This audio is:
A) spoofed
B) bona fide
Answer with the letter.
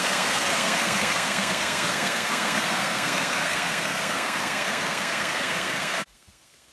A